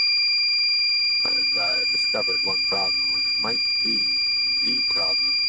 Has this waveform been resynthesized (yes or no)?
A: yes